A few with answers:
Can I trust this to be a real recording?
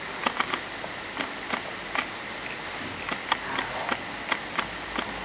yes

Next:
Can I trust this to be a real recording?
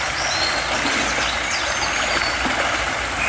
yes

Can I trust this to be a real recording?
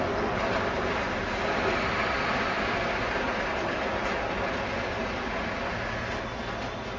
yes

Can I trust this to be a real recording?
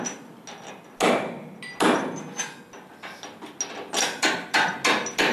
yes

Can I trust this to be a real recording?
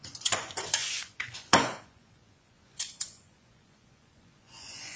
no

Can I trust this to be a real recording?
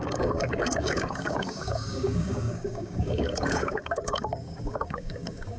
no